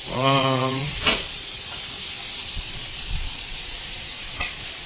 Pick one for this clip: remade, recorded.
remade